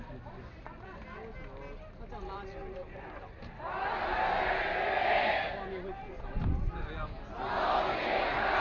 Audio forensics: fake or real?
real